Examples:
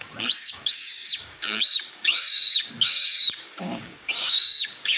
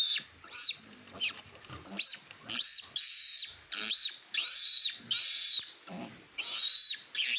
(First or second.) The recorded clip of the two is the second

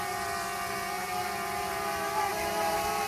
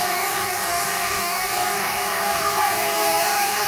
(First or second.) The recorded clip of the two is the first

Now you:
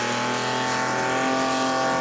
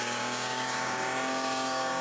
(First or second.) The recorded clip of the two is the first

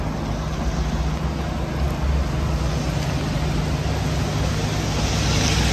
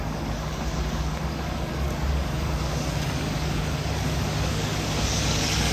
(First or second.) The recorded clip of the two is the first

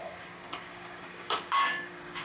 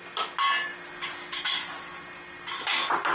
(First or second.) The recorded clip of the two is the second